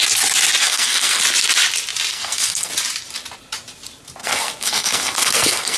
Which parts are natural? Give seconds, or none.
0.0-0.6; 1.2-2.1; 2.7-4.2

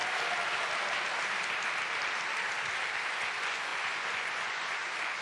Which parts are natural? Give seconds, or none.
0.0-3.1

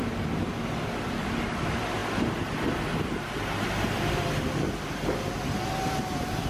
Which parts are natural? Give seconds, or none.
0.0-6.5

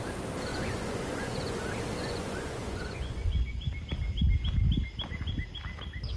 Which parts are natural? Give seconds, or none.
0.0-0.5; 1.6-2.0; 3.6-6.2

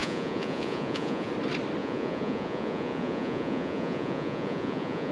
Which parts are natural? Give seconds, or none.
1.3-1.8